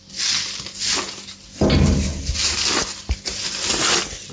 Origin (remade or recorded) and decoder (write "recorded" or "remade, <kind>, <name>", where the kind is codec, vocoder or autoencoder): recorded